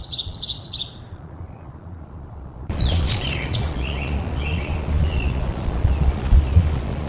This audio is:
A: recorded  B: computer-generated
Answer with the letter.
B